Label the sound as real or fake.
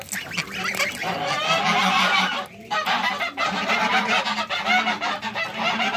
real